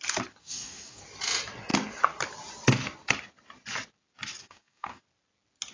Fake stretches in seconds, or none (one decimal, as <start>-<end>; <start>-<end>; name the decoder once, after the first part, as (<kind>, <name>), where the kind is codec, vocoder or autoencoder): 0.4-1.0 (codec, DAC); 4.4-5.0